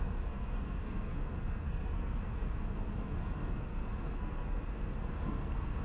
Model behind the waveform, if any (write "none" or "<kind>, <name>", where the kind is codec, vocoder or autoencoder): codec, SNAC